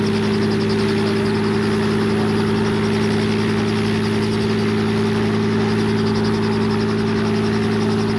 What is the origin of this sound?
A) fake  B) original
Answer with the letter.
B